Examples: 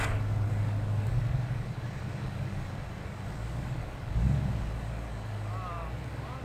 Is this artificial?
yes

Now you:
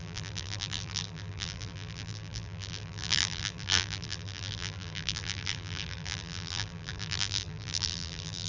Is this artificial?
yes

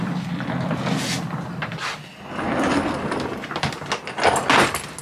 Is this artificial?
no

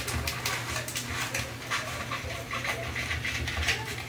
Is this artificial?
no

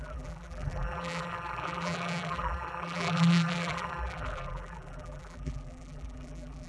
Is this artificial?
yes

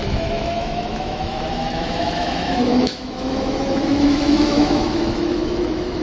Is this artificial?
yes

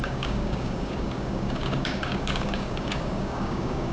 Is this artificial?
yes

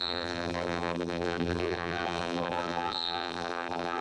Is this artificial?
yes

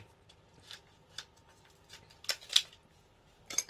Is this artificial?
no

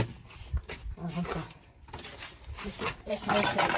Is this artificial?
yes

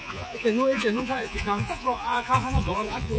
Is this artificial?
yes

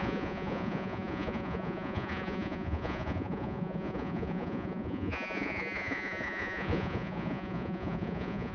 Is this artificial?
yes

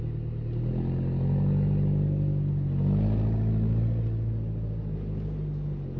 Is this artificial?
no